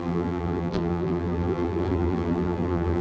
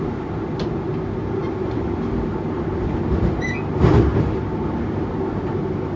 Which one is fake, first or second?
first